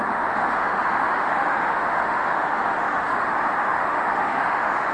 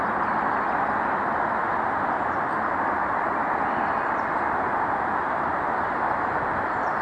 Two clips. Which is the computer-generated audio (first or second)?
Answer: first